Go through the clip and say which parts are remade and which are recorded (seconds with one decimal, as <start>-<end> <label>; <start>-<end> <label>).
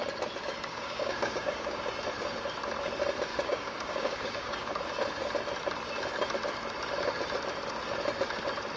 0.0-0.7 recorded; 0.7-1.8 remade; 1.8-3.3 recorded; 3.3-4.8 remade; 4.8-8.8 recorded